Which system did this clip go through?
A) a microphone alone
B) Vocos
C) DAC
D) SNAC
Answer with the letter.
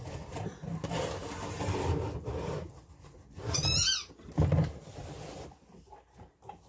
A